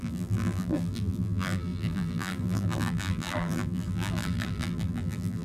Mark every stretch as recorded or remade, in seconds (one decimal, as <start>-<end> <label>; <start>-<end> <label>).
0.0-5.4 remade